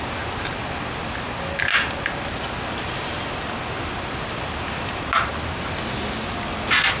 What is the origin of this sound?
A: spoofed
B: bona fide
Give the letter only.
B